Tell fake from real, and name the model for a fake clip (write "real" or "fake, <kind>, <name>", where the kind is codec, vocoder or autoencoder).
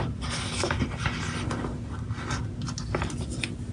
real